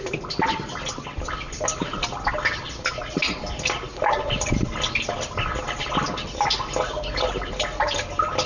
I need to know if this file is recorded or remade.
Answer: recorded